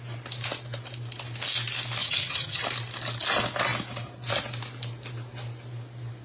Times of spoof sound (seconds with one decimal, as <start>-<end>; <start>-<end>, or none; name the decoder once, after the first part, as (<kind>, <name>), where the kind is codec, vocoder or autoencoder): 2.0-2.6 (vocoder, HiFi-GAN)